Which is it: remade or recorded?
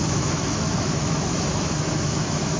remade